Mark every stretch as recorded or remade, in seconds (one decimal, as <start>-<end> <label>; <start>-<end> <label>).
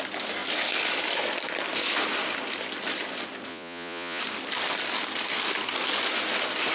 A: 0.0-3.5 recorded; 3.5-4.2 remade; 4.2-6.7 recorded